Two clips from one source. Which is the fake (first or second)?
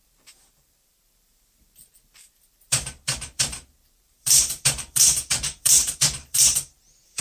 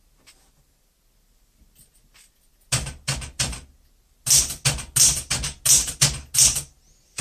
first